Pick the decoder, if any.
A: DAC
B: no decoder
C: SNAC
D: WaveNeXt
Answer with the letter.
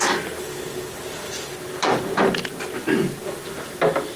B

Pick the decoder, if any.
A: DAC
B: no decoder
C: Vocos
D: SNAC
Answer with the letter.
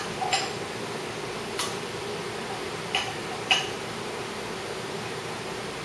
B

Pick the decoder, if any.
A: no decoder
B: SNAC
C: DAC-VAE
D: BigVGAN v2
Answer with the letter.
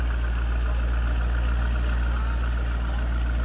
A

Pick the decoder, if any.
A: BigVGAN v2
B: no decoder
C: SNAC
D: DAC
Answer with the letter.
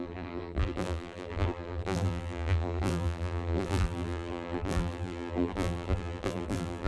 A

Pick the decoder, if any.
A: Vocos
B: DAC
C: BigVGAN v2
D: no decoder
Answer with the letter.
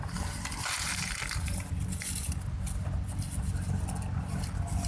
D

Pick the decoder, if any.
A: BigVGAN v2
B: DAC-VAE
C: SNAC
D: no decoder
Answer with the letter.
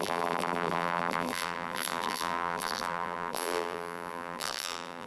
A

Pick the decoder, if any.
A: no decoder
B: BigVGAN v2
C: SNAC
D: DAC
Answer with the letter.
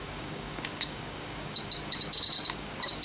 D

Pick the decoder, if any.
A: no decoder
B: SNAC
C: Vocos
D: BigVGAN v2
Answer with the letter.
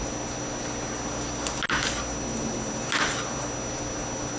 A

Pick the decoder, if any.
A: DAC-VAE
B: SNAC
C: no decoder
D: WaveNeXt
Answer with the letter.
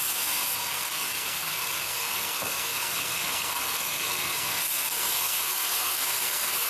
B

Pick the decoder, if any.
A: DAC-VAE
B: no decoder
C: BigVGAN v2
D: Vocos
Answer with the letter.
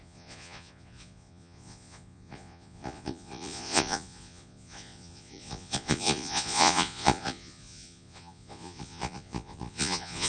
D